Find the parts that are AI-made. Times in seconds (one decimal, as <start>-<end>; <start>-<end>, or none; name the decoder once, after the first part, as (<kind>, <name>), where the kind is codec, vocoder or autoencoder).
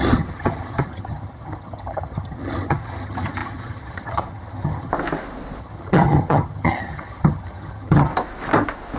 0.0-4.9 (vocoder, HiFi-GAN); 5.6-8.1